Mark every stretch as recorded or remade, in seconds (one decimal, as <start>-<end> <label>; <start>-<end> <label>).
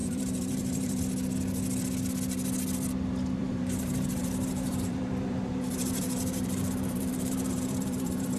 0.0-1.0 remade; 1.0-3.4 recorded; 3.4-8.4 remade